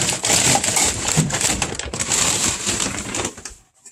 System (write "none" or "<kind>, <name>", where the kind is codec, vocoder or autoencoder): vocoder, BigVGAN v2